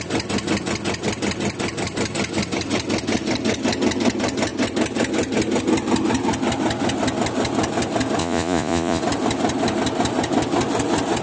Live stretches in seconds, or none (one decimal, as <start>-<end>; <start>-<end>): 0.0-8.2; 9.0-11.2